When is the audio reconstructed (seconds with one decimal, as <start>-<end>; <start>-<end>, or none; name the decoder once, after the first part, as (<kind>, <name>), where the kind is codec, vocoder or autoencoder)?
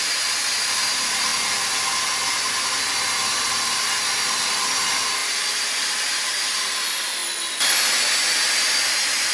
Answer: 0.0-1.3 (vocoder, BigVGAN v2); 3.2-5.2; 5.8-7.2; 8.7-9.3